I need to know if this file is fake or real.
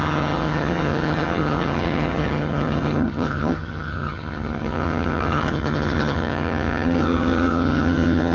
fake